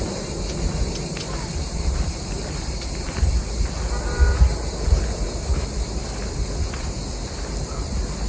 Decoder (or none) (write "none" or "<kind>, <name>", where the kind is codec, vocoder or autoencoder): none